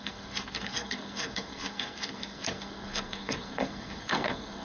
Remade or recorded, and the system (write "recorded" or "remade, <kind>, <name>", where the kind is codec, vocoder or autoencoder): remade, codec, SNAC